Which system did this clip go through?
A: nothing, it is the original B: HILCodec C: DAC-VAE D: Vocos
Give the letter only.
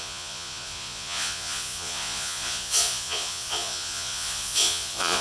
D